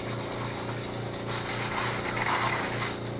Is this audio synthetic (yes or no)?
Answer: no